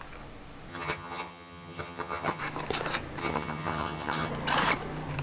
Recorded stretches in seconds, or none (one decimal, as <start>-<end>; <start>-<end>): 0.0-0.7; 2.4-3.2; 4.3-5.2